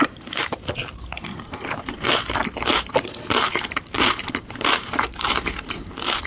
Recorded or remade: remade